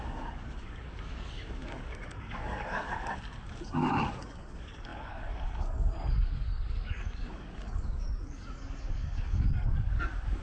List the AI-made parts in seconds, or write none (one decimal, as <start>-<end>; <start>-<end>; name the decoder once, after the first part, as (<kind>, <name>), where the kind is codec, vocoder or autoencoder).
0.0-10.4 (codec, DAC)